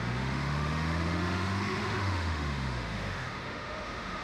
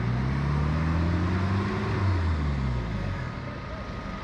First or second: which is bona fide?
second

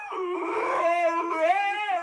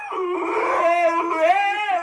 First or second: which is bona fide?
second